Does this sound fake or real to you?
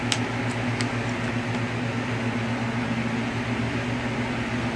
real